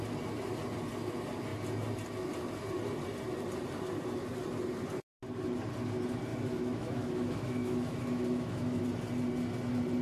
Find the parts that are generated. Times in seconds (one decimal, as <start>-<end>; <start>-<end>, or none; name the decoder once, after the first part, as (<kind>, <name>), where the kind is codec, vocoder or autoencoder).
6.3-8.8 (autoencoder, DAC-VAE)